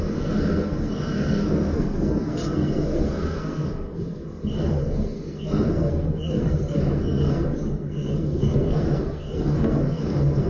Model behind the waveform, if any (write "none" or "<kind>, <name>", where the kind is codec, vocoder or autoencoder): codec, SNAC